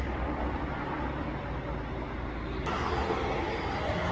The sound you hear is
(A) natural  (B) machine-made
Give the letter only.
A